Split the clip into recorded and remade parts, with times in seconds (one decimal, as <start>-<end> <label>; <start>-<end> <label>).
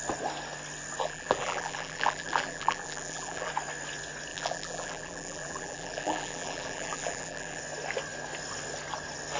0.0-1.0 recorded; 1.0-3.5 remade; 3.5-4.3 recorded; 4.3-7.6 remade; 7.6-9.4 recorded